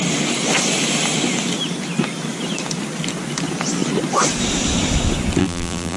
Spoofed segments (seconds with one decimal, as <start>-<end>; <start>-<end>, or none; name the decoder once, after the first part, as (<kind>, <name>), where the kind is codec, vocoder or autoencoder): 5.4-6.0 (vocoder, BigVGAN v2)